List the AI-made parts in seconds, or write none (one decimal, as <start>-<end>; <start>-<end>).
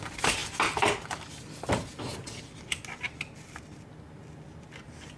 none